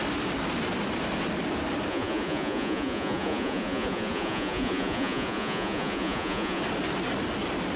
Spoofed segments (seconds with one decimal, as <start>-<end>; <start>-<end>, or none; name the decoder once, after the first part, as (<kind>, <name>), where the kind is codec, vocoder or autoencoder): 1.9-6.6 (vocoder, Vocos)